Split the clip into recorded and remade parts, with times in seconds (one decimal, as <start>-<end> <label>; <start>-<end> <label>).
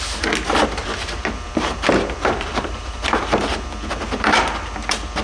0.0-0.8 recorded; 0.8-3.9 remade; 3.9-5.2 recorded